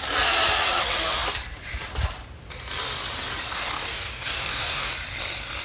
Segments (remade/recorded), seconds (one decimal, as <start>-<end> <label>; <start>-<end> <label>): 0.0-3.5 recorded; 3.5-4.9 remade; 4.9-5.6 recorded